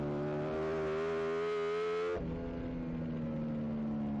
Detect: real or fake real